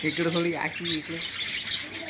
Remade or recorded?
recorded